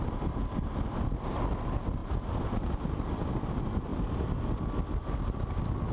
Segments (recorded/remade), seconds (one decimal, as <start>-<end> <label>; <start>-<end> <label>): 0.0-5.9 recorded